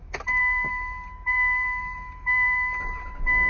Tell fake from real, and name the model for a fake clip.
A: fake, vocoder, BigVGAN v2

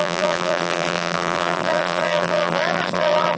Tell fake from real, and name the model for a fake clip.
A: fake, vocoder, BigVGAN v2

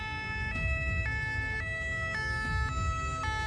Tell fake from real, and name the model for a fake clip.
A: real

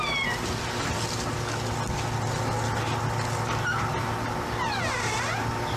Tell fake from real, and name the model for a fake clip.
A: real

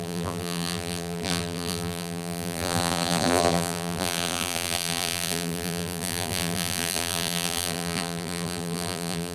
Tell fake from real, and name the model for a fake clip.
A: fake, vocoder, BigVGAN v2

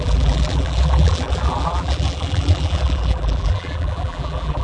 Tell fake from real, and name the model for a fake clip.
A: fake, vocoder, BigVGAN v2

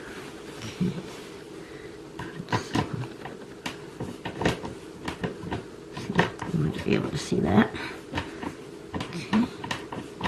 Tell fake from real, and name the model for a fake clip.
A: fake, vocoder, BigVGAN v2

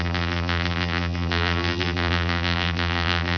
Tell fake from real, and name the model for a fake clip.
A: fake, vocoder, BigVGAN v2